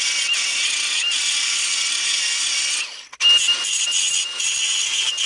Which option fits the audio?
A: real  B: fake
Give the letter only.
A